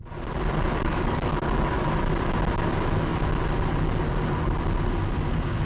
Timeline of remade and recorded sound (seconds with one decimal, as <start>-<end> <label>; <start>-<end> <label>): 0.0-0.7 recorded; 0.7-1.7 remade; 1.7-5.7 recorded